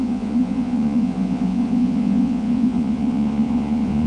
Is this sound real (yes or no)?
no